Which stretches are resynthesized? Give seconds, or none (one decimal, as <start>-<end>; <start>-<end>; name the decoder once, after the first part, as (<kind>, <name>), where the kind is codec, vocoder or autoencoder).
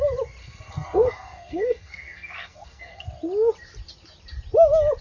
0.4-3.1 (codec, SNAC)